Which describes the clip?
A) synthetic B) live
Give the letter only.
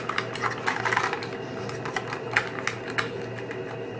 B